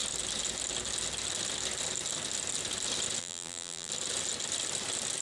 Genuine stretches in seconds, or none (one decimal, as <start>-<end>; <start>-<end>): 0.0-3.2; 3.9-5.2